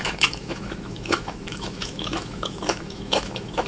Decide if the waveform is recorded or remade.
remade